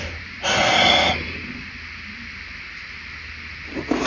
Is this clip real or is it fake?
real